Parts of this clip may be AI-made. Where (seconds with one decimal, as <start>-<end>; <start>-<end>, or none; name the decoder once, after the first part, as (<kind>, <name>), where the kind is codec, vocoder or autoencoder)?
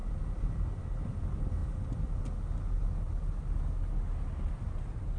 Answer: none